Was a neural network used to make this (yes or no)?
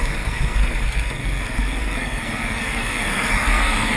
yes